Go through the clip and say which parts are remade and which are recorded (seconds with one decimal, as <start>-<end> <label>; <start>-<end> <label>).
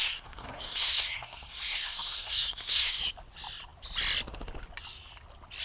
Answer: 0.0-3.0 remade; 3.0-5.6 recorded